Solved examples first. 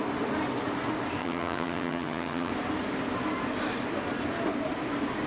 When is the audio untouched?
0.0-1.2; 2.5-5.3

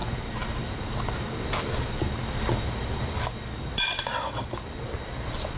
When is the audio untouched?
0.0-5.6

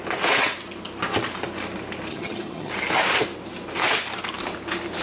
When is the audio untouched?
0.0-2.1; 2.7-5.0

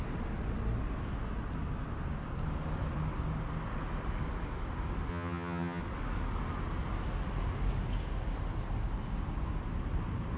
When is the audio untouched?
0.0-5.1; 5.8-10.4

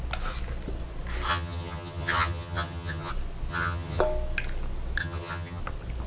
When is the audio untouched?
0.0-1.3; 3.1-3.5; 4.0-5.0; 5.6-6.1

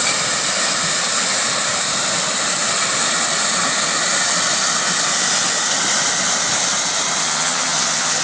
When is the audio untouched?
0.0-7.2